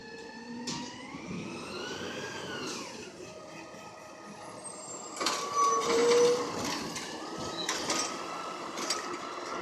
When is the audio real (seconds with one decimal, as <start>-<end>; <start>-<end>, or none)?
0.0-4.7; 6.0-8.1